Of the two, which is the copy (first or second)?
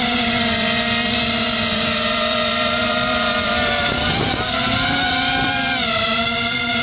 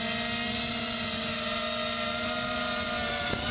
first